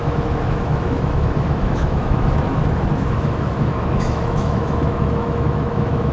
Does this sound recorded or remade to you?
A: remade